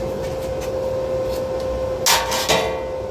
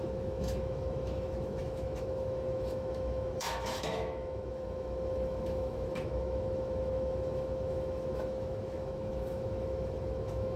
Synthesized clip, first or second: second